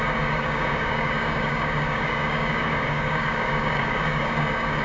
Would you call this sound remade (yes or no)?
yes